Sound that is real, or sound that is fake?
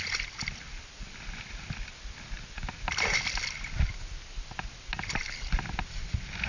real